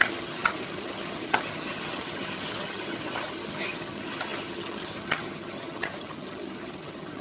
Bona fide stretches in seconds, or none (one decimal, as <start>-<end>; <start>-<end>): none